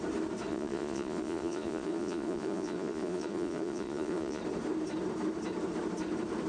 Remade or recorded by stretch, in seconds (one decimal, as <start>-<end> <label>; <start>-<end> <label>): 0.0-0.5 recorded; 0.5-4.4 remade; 4.4-6.5 recorded